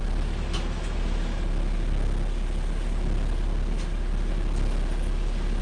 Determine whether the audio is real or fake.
real